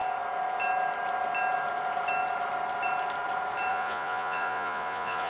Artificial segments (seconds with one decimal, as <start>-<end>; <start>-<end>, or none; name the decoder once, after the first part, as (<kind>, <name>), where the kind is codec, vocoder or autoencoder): 3.7-5.3 (vocoder, Vocos)